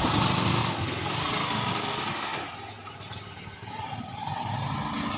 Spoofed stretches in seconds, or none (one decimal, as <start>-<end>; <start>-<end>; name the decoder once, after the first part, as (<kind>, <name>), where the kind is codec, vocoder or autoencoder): none